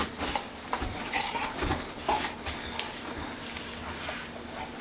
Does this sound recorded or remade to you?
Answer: recorded